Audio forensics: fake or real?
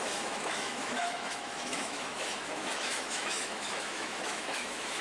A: fake